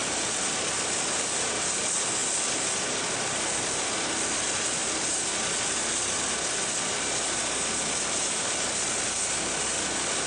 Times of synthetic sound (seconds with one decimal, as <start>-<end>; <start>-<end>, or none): 0.0-1.6; 2.2-3.2